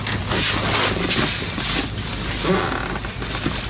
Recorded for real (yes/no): yes